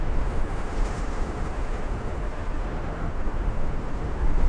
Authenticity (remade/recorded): remade